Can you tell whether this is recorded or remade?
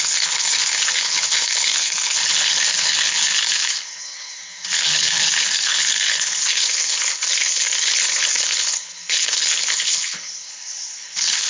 remade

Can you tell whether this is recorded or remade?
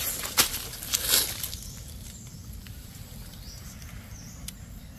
recorded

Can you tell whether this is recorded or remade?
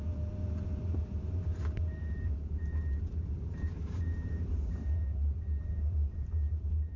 remade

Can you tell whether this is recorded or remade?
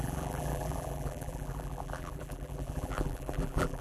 remade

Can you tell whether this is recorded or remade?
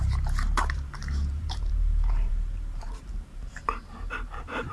remade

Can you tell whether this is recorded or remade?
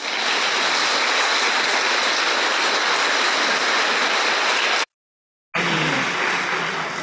recorded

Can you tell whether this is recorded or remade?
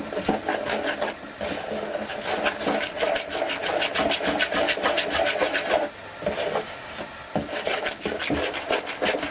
recorded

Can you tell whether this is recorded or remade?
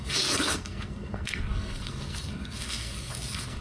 remade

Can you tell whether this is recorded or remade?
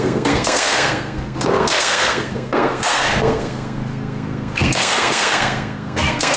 remade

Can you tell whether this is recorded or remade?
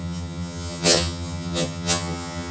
remade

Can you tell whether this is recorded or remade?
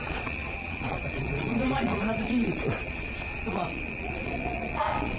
remade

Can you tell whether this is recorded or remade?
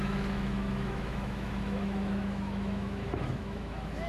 remade